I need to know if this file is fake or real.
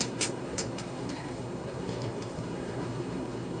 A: fake